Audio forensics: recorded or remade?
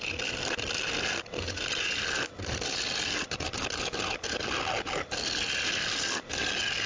recorded